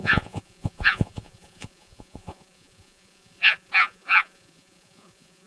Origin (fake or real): fake